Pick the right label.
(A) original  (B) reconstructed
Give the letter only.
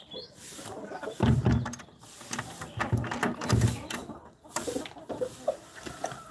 A